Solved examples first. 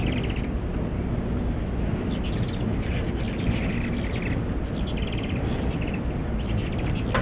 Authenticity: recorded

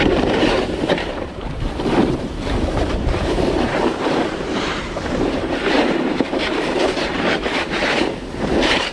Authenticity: remade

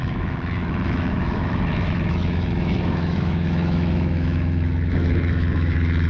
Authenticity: remade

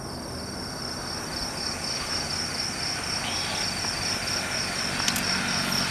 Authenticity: recorded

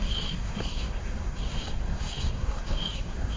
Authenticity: remade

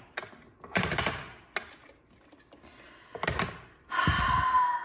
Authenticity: recorded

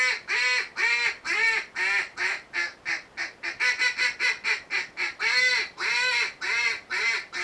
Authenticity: recorded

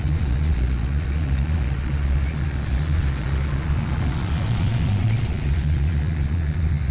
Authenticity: remade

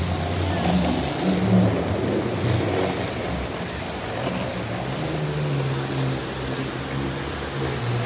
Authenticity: recorded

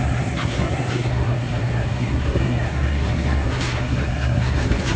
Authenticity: remade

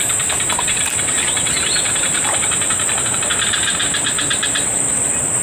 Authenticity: recorded